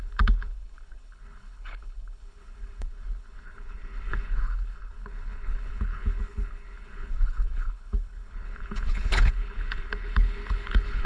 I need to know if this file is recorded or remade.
remade